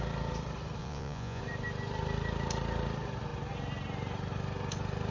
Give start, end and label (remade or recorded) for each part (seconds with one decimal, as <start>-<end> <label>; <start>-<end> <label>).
0.0-0.8 recorded; 0.8-1.4 remade; 1.4-5.1 recorded